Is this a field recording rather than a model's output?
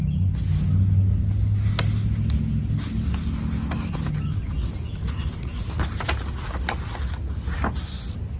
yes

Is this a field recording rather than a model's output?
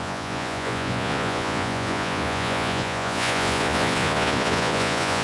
no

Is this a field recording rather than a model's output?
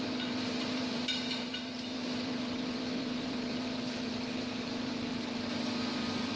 no